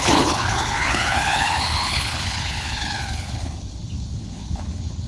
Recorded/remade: remade